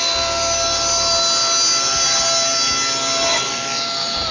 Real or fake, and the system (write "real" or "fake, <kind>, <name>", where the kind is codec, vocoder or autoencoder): real